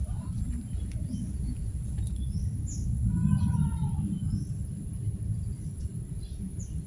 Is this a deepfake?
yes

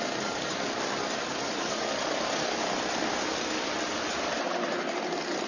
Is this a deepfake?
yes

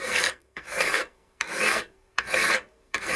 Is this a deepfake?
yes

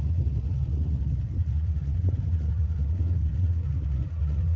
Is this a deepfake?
yes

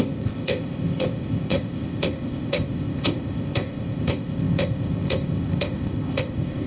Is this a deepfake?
yes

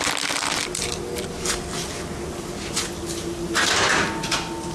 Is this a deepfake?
no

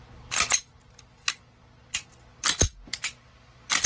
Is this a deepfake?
no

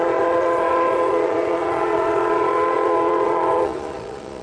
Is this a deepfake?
yes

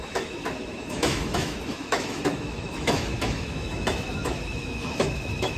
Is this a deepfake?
yes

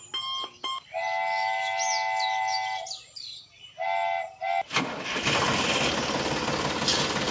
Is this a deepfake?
no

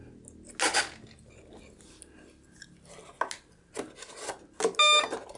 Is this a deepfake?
no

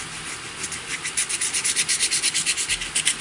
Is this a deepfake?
no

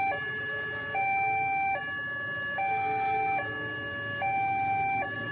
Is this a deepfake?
no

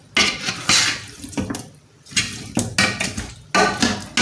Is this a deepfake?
no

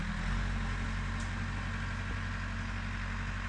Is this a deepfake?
no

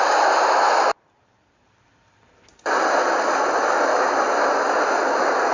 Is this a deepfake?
yes